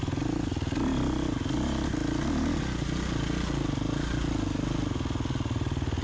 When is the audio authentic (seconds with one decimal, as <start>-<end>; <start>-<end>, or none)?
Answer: 0.0-6.0